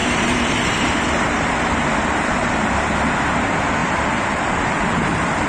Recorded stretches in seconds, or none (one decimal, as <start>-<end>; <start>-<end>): 2.7-3.8